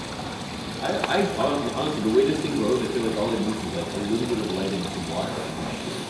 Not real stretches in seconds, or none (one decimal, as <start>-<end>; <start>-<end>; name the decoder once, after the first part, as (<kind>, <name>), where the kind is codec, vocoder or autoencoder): 5.3-6.1 (codec, DAC)